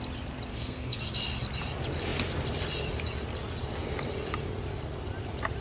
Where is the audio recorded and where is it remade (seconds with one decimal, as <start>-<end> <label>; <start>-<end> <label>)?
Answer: 0.0-0.5 recorded; 0.5-1.0 remade; 1.0-5.6 recorded